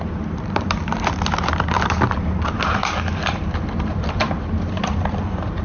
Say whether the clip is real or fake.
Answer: fake